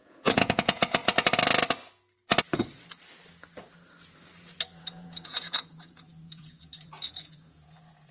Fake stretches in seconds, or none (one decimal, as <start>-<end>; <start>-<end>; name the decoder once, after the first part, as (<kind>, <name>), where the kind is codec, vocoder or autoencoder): 0.0-1.0 (vocoder, Vocos); 4.8-8.1